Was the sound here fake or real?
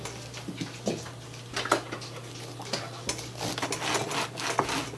real